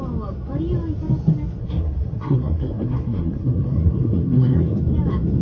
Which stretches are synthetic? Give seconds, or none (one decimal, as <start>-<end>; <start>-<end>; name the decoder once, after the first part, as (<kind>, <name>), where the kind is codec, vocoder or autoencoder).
1.6-4.8 (codec, SNAC)